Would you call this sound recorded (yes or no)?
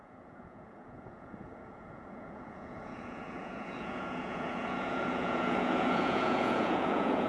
no